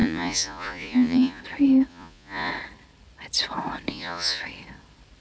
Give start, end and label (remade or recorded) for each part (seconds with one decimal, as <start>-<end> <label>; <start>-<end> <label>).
0.0-1.4 remade; 1.4-1.9 recorded; 1.9-2.5 remade; 2.5-3.9 recorded; 3.9-4.4 remade; 4.4-5.2 recorded